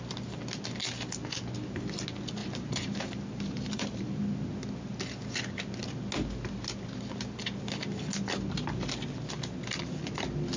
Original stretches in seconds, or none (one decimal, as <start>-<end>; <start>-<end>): 0.0-2.4; 4.2-10.6